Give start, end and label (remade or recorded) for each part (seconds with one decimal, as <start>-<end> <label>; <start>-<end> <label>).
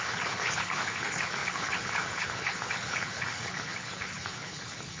0.0-5.0 remade